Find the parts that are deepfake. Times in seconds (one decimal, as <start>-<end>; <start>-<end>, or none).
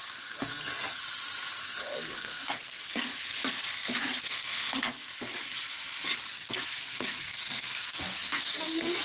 0.0-1.0; 1.6-3.1; 4.2-5.1; 6.3-9.0